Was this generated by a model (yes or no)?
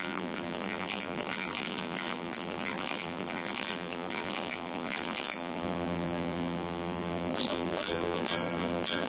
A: yes